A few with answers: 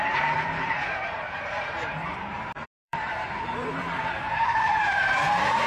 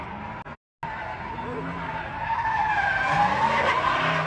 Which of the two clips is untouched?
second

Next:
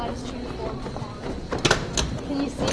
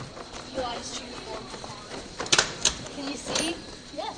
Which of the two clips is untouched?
first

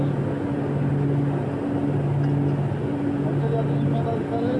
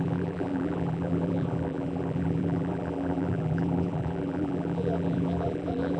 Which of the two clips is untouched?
first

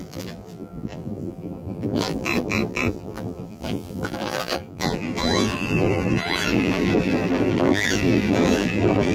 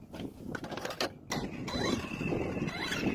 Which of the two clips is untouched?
second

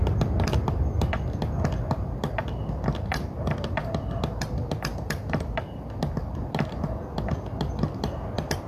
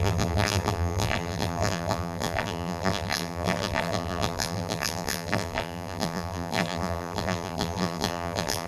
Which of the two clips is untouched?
first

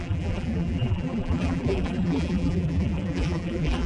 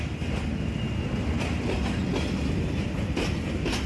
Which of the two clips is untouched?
second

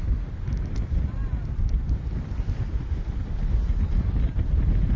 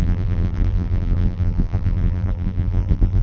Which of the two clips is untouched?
first